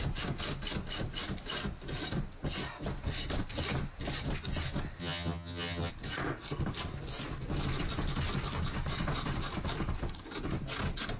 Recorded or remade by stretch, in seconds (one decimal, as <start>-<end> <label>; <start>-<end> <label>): 0.0-5.0 recorded; 5.0-5.9 remade; 5.9-11.2 recorded